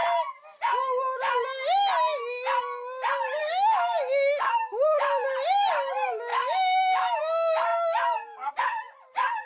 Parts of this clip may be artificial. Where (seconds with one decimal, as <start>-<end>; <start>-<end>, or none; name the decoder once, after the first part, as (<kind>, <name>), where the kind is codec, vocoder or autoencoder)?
3.4-4.9 (autoencoder, DAC-VAE); 6.3-7.2